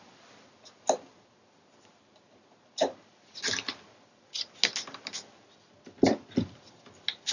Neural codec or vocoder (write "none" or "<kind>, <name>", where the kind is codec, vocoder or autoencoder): none